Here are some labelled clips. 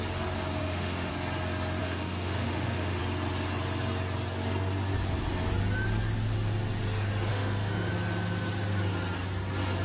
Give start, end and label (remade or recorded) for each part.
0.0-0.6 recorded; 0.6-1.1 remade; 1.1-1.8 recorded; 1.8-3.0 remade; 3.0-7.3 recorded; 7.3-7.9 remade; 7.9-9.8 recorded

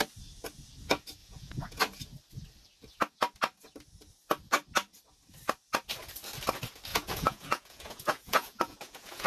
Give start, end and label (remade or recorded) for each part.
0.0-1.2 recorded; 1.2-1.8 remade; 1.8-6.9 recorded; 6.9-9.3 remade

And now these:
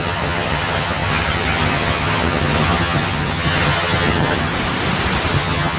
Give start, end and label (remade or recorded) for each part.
0.0-4.5 remade; 4.5-5.3 recorded; 5.3-5.8 remade